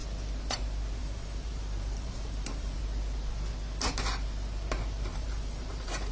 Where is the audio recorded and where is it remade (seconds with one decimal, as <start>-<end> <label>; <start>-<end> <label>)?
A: 0.0-1.0 recorded; 1.0-2.8 remade; 2.8-5.1 recorded; 5.1-6.1 remade